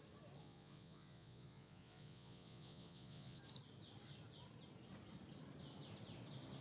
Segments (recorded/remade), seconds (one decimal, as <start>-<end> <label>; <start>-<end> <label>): 0.0-0.4 recorded; 0.4-3.4 remade; 3.4-6.6 recorded